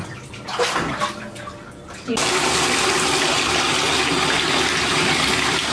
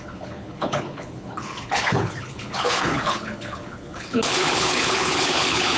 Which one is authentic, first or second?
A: first